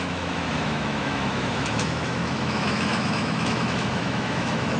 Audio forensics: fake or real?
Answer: fake